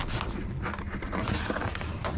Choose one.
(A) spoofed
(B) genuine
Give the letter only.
B